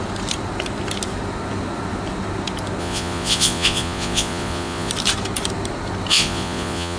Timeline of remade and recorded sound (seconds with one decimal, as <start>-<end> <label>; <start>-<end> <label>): 0.0-2.8 recorded; 2.8-4.9 remade; 4.9-6.1 recorded; 6.1-7.0 remade